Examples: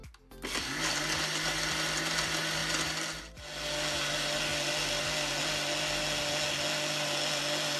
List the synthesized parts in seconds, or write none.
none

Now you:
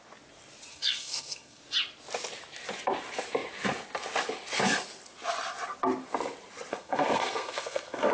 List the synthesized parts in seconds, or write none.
0.7-1.6 (codec, SNAC); 6.7-8.1